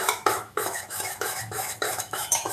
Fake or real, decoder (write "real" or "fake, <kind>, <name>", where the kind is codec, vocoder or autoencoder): fake, autoencoder, DAC-VAE